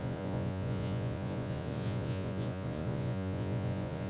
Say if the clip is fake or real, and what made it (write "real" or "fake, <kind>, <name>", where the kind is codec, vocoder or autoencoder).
fake, vocoder, Vocos